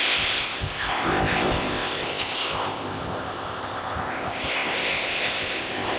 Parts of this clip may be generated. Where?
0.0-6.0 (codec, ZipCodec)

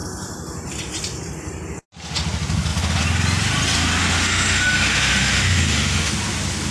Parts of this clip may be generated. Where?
4.0-6.1 (autoencoder, DAC-VAE)

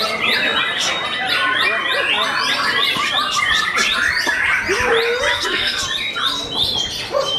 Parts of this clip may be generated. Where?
5.3-5.8 (codec, SNAC)

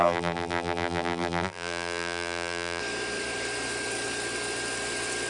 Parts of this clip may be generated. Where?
0.0-2.8 (vocoder, BigVGAN v2)